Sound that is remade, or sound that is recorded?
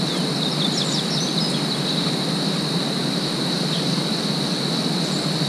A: recorded